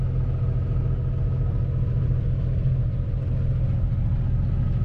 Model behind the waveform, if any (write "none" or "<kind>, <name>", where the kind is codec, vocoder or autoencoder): none